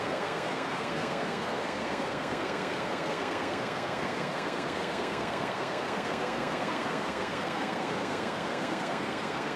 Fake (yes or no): yes